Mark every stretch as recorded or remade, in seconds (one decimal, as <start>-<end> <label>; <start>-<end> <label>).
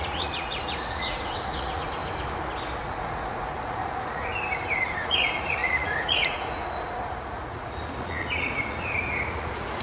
0.0-2.0 remade; 2.0-2.8 recorded; 2.8-4.3 remade; 4.3-5.0 recorded; 5.0-9.8 remade